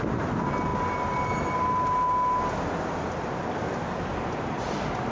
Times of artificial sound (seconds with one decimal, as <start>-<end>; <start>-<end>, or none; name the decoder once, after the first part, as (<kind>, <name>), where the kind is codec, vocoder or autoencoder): none